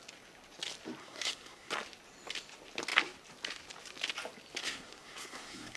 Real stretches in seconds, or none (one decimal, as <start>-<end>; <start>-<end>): 0.0-1.0; 1.7-4.6